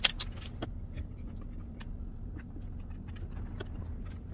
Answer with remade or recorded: recorded